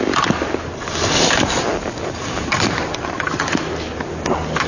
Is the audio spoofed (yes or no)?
no